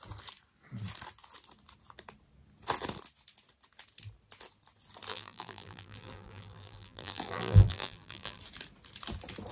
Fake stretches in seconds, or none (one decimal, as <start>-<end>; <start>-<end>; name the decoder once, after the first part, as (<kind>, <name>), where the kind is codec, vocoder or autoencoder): 5.1-8.4 (vocoder, BigVGAN v2)